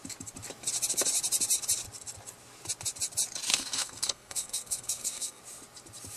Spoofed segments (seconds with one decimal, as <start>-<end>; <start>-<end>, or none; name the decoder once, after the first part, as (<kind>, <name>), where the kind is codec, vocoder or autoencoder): 3.5-5.4 (codec, SNAC)

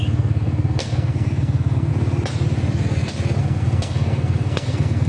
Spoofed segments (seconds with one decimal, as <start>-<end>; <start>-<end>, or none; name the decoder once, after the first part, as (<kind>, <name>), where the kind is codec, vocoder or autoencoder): 0.0-1.9 (codec, SNAC); 3.4-5.1

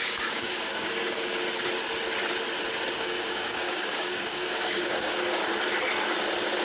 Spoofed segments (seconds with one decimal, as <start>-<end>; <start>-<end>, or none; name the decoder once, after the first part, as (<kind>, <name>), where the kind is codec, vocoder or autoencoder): 0.0-1.4 (codec, DAC); 2.9-5.4

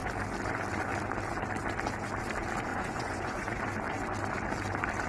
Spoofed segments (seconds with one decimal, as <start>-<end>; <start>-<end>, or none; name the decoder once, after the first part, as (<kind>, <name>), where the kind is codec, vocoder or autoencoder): 2.7-3.6 (vocoder, Vocos)

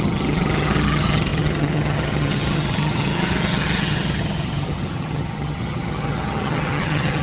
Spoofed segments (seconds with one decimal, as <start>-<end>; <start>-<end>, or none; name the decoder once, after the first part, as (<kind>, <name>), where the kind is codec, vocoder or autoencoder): 0.0-7.2 (vocoder, HiFi-GAN)

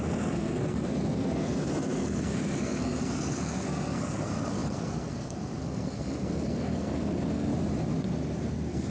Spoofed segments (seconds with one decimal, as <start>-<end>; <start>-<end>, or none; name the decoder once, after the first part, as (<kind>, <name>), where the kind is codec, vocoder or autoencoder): 0.0-7.5 (codec, SNAC); 8.5-8.9